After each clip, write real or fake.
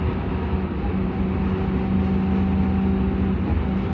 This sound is real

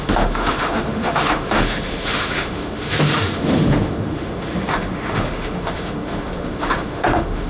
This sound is fake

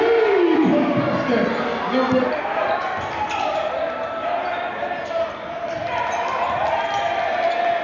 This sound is real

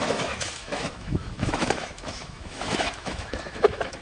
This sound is fake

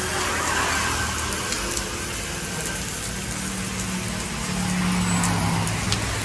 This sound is real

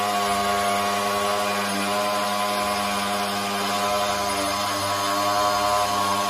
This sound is real